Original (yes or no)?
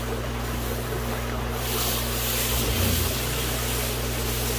yes